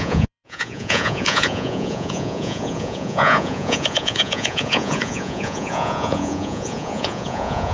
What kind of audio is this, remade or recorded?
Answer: remade